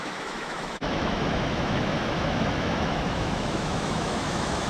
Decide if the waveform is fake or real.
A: fake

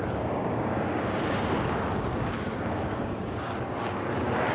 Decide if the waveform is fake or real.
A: fake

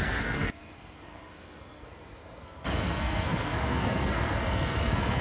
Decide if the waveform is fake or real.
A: fake